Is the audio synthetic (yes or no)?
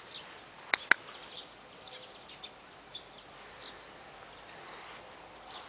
no